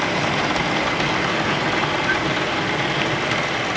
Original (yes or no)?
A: yes